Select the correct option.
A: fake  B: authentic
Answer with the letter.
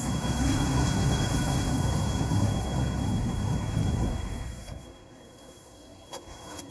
A